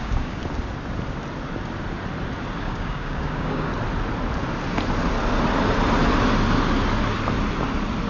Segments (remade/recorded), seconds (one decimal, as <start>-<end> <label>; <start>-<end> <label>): 0.0-0.4 remade; 0.4-2.6 recorded; 2.6-3.7 remade; 3.7-8.1 recorded